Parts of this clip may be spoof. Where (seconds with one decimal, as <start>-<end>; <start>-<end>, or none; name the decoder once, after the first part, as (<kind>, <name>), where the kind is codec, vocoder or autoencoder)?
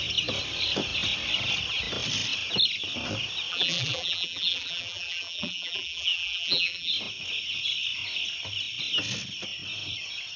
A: 3.5-6.9 (vocoder, BigVGAN v2)